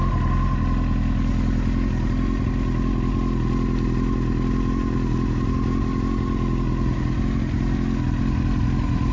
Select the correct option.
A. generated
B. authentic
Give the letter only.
B